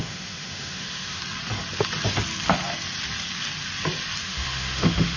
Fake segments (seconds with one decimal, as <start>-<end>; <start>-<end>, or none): 0.0-1.2; 4.2-5.2